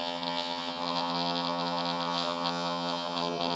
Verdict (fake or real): fake